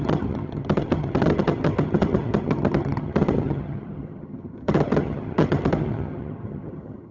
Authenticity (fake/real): fake